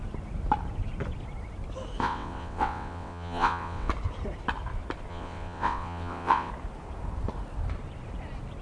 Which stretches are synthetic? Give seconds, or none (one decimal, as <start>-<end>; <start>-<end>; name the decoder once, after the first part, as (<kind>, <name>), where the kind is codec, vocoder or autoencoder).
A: 2.0-3.9 (vocoder, WaveNeXt); 5.1-6.5